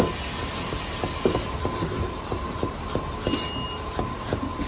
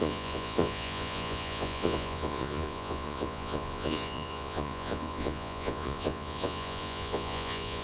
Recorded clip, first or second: first